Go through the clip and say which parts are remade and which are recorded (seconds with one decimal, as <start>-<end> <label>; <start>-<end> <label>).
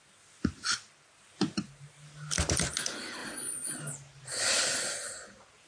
0.0-5.7 recorded